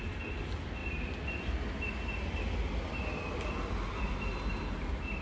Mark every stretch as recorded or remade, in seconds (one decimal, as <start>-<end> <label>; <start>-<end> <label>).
0.0-5.2 recorded